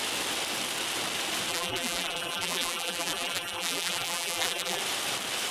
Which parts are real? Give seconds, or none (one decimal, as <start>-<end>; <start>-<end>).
0.0-1.5; 4.8-5.5